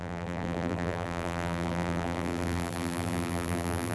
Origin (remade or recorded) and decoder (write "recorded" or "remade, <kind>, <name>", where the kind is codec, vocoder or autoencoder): remade, vocoder, BigVGAN v2